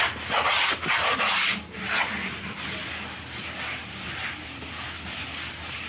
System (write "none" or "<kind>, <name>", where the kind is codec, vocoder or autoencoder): none